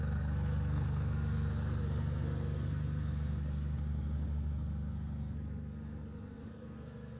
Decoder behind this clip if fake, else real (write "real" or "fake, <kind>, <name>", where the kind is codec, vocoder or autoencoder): fake, codec, SNAC